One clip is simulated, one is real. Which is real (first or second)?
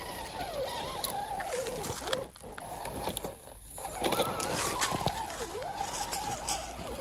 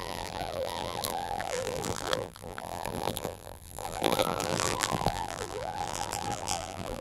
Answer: first